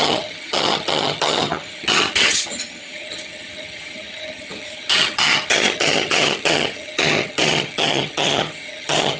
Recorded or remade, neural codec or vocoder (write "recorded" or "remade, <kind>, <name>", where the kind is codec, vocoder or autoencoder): remade, vocoder, HiFi-GAN